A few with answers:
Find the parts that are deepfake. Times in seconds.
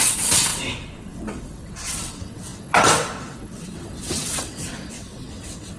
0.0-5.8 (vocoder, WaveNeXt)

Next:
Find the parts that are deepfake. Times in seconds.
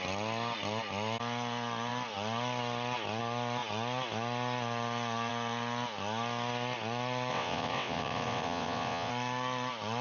7.3-9.1 (vocoder, WaveNeXt)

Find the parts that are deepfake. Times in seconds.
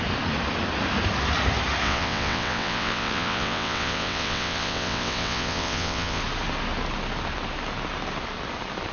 1.8-6.2 (vocoder, WaveNeXt)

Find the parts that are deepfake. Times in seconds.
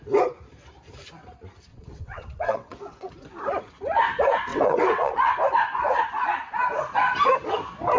1.7-3.1 (vocoder, WaveNeXt); 4.5-5.3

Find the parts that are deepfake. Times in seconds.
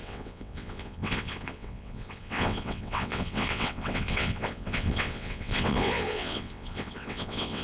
0.0-7.6 (vocoder, WaveNeXt)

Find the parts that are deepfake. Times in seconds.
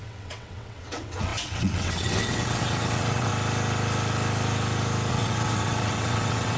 0.0-3.3 (vocoder, WaveNeXt); 5.1-6.6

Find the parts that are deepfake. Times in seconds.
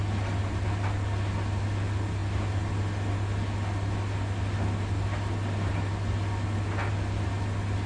none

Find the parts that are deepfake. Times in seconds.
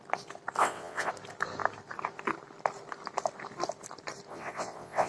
0.6-1.1 (vocoder, WaveNeXt); 4.3-5.1